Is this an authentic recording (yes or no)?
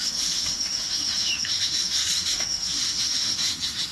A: no